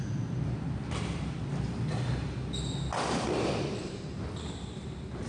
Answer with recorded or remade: recorded